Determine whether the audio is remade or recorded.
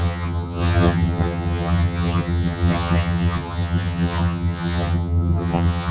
remade